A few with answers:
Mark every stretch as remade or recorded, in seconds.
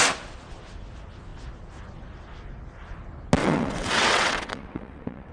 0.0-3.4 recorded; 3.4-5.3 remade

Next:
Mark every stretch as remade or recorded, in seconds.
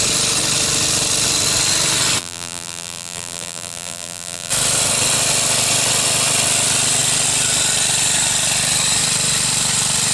0.0-2.2 recorded; 2.2-4.5 remade; 4.5-10.1 recorded